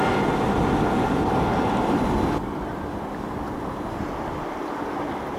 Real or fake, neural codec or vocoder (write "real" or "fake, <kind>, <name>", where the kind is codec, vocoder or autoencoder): real